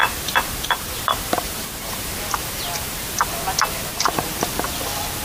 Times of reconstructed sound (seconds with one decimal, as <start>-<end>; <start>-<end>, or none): 0.0-3.1; 3.9-4.4